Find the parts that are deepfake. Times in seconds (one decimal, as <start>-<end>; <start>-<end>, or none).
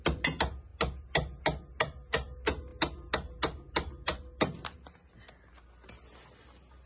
none